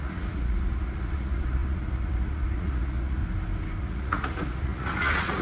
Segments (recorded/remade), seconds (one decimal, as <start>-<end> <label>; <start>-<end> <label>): 0.0-3.2 remade; 3.2-3.8 recorded; 3.8-5.4 remade